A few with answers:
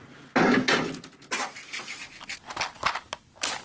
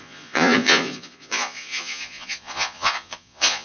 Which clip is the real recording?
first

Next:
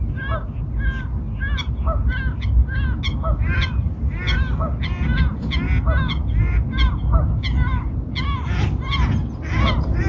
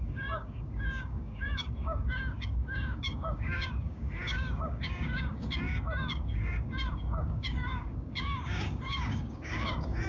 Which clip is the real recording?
first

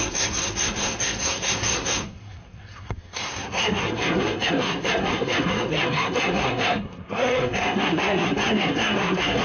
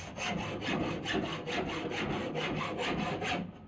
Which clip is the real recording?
second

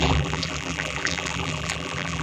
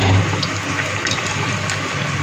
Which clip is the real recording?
second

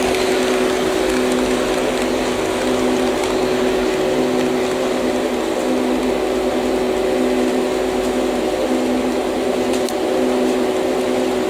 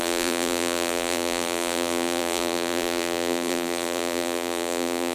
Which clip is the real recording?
first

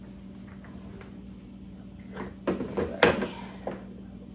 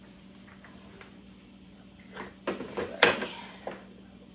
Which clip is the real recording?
first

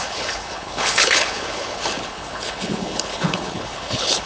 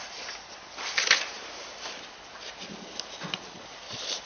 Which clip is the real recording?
second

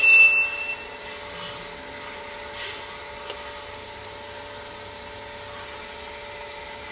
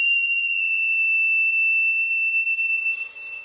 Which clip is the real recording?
first